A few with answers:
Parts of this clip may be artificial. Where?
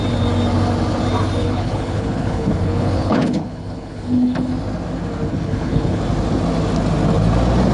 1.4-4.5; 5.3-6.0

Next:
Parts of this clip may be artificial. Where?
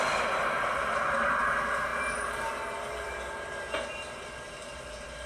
0.0-5.3